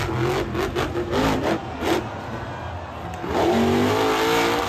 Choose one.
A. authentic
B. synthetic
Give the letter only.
A